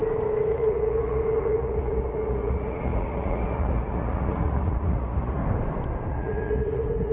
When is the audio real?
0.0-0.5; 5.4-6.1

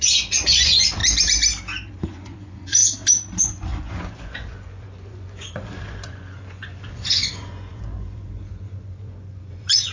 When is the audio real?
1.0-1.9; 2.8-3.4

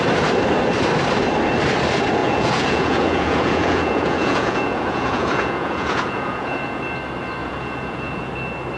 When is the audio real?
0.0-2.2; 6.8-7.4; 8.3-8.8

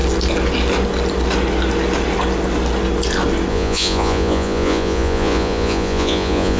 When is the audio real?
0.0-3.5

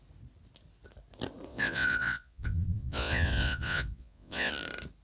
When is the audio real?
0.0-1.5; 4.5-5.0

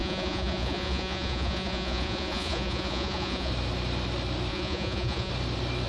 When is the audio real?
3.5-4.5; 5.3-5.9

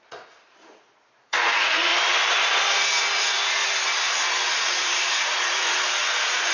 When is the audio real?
1.9-3.2; 3.6-4.5

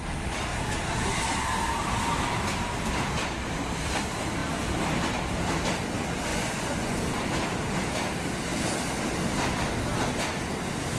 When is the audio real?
0.0-6.3; 7.0-11.0